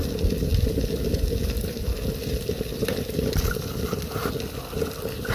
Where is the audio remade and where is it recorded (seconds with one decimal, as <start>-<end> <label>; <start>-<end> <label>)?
0.0-5.3 recorded